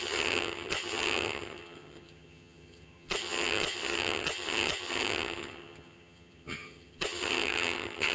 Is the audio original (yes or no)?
no